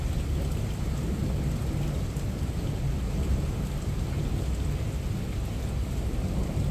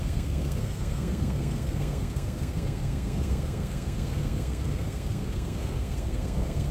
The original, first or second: first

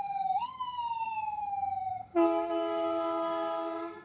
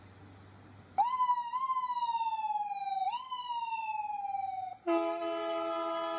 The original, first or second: second